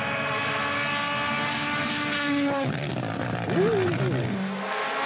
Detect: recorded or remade recorded